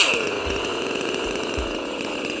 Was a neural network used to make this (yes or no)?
yes